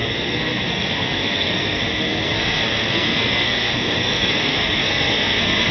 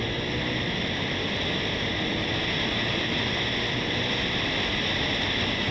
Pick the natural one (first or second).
second